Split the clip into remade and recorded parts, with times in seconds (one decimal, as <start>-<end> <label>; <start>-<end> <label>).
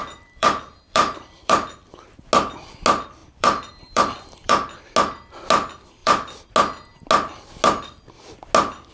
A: 0.0-1.7 remade; 1.7-3.2 recorded; 3.2-4.9 remade; 4.9-6.0 recorded; 6.0-6.5 remade; 6.5-8.9 recorded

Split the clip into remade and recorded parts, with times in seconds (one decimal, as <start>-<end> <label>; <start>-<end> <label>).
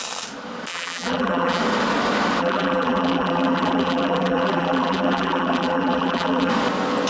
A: 0.0-0.7 recorded; 0.7-1.6 remade; 1.6-2.4 recorded; 2.4-6.5 remade; 6.5-7.1 recorded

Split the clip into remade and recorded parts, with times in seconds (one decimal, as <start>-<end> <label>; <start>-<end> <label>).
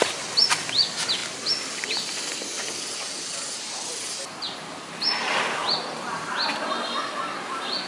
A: 0.0-5.6 recorded; 5.6-6.7 remade; 6.7-7.9 recorded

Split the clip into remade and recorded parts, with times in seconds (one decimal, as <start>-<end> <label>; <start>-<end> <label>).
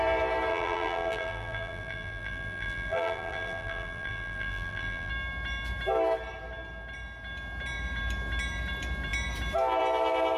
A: 0.0-0.5 recorded; 0.5-5.1 remade; 5.1-10.4 recorded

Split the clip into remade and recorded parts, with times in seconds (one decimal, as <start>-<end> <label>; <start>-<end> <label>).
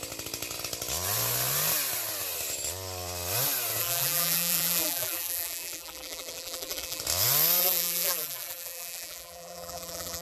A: 0.0-3.8 recorded; 3.8-7.0 remade; 7.0-7.6 recorded; 7.6-10.2 remade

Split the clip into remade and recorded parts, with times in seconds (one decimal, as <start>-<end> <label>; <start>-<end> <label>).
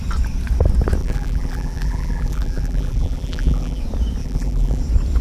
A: 0.0-1.0 recorded; 1.0-3.8 remade; 3.8-4.2 recorded; 4.2-4.8 remade; 4.8-5.2 recorded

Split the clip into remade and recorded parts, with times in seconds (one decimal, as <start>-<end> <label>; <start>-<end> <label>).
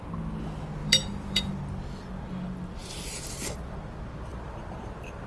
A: 0.0-0.8 recorded; 0.8-1.5 remade; 1.5-4.3 recorded; 4.3-5.3 remade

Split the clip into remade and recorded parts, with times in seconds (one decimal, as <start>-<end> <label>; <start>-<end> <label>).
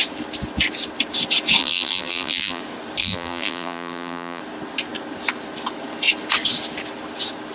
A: 0.0-1.6 recorded; 1.6-2.6 remade; 2.6-3.0 recorded; 3.0-4.4 remade; 4.4-7.5 recorded